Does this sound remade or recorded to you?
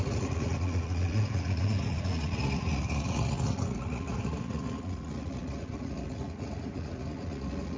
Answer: remade